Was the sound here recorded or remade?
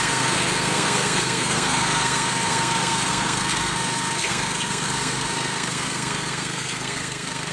remade